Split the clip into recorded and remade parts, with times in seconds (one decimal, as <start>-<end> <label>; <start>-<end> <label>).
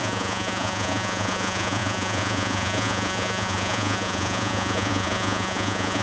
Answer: 0.0-6.0 remade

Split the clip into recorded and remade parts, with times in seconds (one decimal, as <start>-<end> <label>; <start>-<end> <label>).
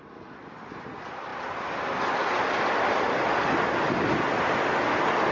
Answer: 0.0-5.3 recorded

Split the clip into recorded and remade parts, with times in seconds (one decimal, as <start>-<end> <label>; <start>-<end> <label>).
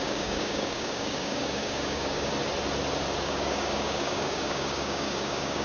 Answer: 0.0-2.3 remade; 2.3-3.2 recorded; 3.2-5.6 remade